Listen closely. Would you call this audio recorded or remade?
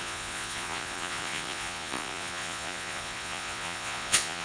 remade